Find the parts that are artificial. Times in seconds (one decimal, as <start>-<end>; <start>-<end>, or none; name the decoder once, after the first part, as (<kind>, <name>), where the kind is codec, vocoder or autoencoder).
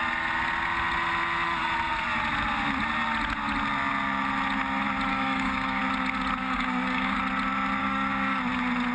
5.1-5.8 (codec, DAC); 6.4-7.2; 7.8-8.4